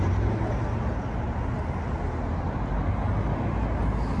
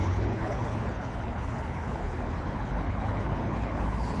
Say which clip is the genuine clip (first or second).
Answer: first